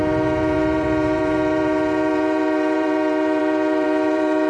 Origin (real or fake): fake